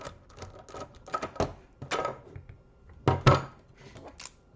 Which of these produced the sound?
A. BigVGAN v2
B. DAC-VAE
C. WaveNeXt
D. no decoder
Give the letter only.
D